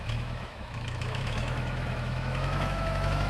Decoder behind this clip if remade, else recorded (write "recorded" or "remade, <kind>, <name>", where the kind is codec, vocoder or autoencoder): remade, autoencoder, DAC-VAE